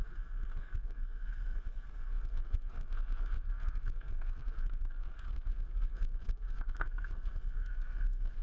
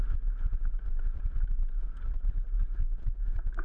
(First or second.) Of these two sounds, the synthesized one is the first